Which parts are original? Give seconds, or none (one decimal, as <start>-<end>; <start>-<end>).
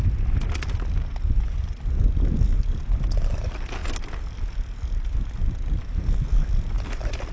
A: 0.0-7.3